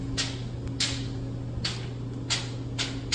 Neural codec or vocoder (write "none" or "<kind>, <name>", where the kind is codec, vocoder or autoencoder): none